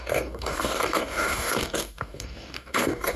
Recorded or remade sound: remade